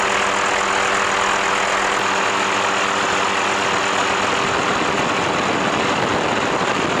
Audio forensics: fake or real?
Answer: real